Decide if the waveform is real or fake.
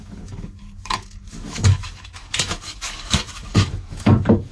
fake